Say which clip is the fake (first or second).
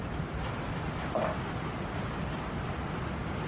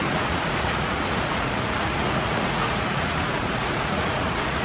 second